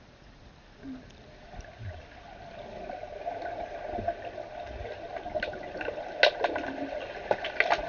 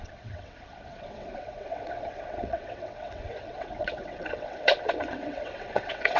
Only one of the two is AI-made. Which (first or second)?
second